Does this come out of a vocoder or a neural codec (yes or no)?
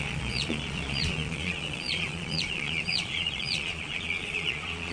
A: yes